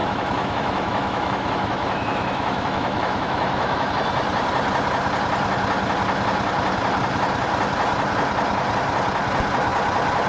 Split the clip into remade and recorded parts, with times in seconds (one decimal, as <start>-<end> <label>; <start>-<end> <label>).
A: 0.0-3.9 remade; 3.9-10.3 recorded